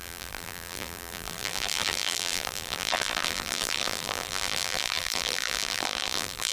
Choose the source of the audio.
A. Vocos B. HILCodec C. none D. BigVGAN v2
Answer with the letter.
D